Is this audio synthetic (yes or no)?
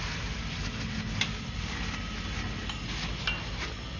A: no